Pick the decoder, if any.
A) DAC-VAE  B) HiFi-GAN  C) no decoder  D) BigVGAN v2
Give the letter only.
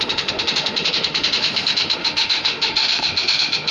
A